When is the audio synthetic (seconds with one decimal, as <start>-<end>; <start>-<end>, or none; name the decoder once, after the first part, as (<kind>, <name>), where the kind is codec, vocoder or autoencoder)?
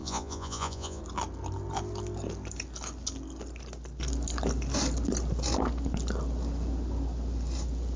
0.0-1.0 (vocoder, Vocos)